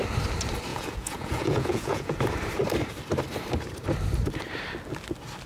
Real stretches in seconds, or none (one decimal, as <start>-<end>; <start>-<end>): 0.0-0.7; 2.2-5.5